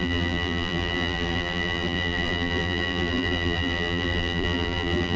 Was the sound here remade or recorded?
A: remade